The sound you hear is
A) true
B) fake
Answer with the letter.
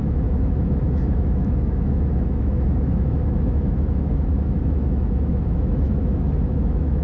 B